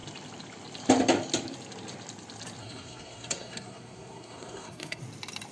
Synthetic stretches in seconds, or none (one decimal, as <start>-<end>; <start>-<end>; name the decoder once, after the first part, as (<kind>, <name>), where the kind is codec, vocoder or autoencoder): 2.6-5.0 (codec, SNAC)